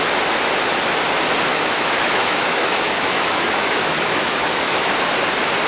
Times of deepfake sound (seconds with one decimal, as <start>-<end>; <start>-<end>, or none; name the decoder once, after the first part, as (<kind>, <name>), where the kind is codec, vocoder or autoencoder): 1.5-4.9 (autoencoder, DAC-VAE)

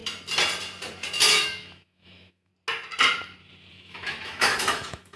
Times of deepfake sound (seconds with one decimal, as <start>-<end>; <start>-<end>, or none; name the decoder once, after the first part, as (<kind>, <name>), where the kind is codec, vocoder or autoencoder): 1.3-2.5 (autoencoder, DAC-VAE); 3.7-5.2

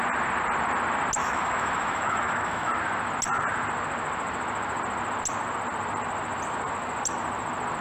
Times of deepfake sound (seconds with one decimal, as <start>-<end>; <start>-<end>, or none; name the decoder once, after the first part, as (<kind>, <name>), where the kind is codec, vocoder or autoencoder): 1.2-2.7 (autoencoder, DAC-VAE)

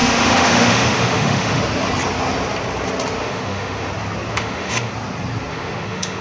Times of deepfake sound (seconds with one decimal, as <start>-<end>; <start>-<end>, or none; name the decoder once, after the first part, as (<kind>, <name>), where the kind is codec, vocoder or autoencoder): 0.0-1.6 (autoencoder, DAC-VAE); 3.2-3.9; 4.3-4.9; 5.5-6.2

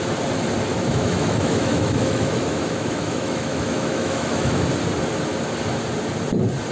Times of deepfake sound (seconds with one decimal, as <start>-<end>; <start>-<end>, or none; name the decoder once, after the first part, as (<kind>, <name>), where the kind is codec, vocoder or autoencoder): 0.7-4.7 (autoencoder, DAC-VAE)

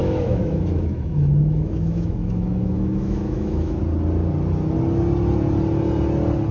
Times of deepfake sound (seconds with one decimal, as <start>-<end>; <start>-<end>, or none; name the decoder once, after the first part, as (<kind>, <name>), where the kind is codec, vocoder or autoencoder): 0.0-3.8 (autoencoder, DAC-VAE)

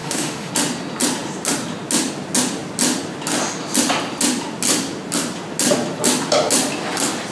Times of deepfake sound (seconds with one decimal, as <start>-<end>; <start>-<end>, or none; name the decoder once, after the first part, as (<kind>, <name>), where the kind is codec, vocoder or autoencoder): 0.0-0.5 (autoencoder, DAC-VAE)